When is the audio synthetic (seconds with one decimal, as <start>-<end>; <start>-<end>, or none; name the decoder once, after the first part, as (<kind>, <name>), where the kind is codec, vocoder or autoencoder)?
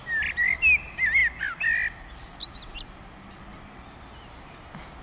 none